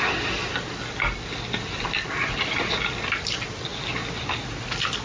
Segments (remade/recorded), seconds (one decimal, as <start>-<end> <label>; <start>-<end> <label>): 0.0-5.0 recorded